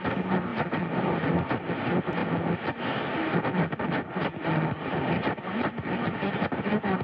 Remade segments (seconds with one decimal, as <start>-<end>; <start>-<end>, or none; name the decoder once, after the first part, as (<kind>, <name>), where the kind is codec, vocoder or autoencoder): none